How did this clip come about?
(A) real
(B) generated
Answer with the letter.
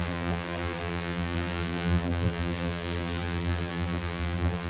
B